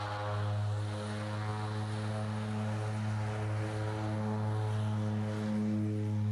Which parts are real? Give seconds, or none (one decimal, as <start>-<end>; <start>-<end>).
0.0-6.3